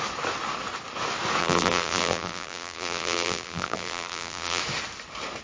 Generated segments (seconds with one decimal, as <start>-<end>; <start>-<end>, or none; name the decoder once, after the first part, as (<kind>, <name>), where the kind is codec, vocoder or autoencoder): 1.4-4.6 (vocoder, BigVGAN v2)